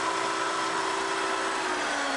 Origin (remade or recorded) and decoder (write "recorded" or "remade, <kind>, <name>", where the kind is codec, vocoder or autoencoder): recorded